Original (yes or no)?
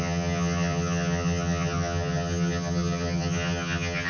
no